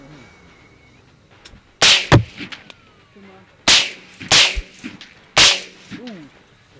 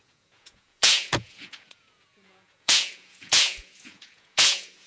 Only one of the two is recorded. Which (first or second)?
first